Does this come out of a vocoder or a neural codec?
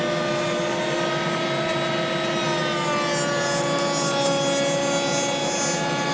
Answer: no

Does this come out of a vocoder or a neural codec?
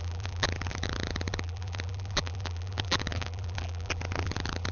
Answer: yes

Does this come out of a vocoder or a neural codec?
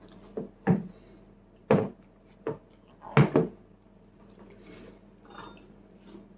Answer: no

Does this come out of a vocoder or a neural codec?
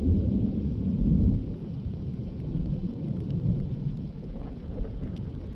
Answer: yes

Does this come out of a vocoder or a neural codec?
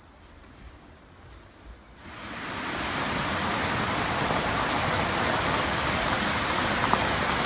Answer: no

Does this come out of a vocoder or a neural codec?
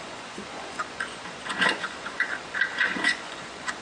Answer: yes